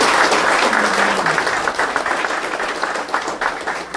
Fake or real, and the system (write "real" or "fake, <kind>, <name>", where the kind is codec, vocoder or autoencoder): real